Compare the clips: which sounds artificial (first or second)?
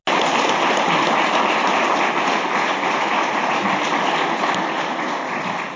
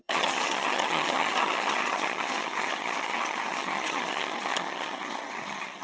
second